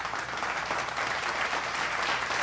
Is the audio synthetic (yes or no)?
no